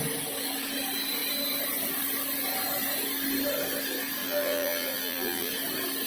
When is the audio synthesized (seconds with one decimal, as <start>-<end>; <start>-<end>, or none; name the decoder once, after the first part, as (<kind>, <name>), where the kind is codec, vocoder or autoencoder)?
4.2-5.5 (vocoder, BigVGAN v2)